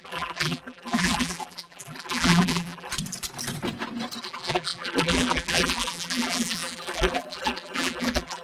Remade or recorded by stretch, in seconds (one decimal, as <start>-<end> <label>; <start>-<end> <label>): 0.0-2.9 remade; 2.9-4.2 recorded; 4.2-8.4 remade